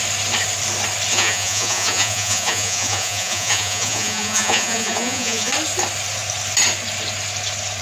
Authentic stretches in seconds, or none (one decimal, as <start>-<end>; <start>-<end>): 0.0-1.1; 5.5-7.8